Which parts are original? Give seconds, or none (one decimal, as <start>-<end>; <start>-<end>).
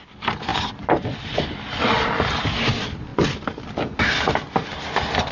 0.0-5.3